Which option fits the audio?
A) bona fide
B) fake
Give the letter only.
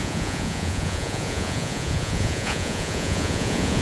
B